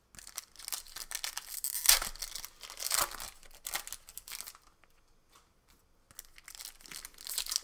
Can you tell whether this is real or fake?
real